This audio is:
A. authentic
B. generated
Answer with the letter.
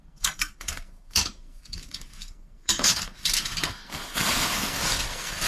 B